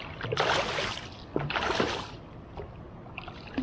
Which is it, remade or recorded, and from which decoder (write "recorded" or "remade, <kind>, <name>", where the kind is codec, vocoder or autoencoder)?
recorded